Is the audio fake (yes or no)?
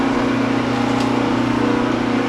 no